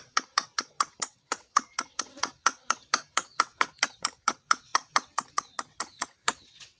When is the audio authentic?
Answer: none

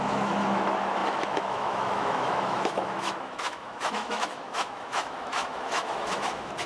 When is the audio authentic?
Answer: none

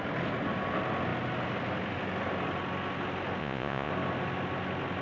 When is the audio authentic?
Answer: 0.0-3.4; 3.9-5.0

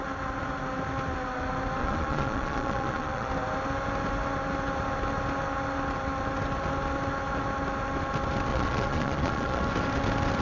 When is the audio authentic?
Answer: 0.0-1.8; 3.3-8.5; 9.6-10.4

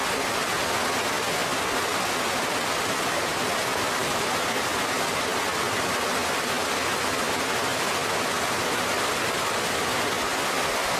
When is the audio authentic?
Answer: 0.0-11.0

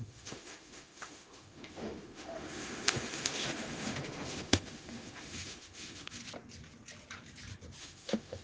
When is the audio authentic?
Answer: 6.2-7.8